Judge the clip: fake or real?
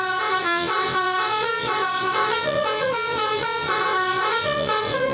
fake